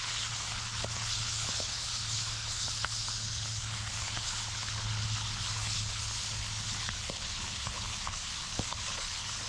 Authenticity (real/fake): fake